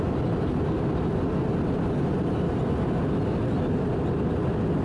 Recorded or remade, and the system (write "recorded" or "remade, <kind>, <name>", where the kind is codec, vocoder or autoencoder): recorded